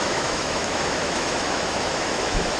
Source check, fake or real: fake